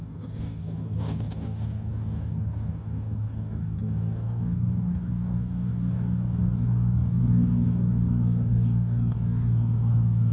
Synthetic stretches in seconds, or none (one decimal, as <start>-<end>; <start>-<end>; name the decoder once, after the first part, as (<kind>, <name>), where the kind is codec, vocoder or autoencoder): 0.0-10.3 (codec, DAC)